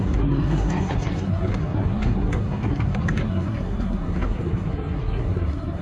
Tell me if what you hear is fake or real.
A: fake